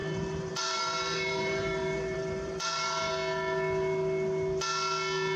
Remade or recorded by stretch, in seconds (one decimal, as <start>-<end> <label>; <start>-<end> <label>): 0.0-3.1 remade; 3.1-5.4 recorded